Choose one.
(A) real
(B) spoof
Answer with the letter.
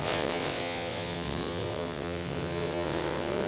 B